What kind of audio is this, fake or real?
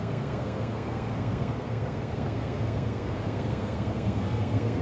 fake